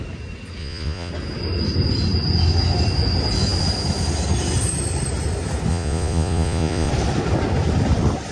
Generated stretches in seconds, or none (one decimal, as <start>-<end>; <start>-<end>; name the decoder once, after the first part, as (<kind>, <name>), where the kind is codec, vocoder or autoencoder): 0.6-1.1 (vocoder, Vocos); 5.7-6.9